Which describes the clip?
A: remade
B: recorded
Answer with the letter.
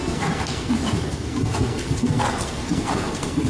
A